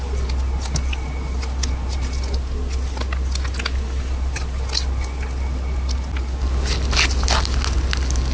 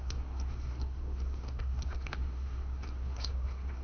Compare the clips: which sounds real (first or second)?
first